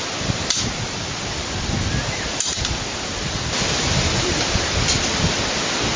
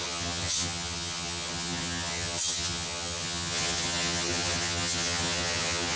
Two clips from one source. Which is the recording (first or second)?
first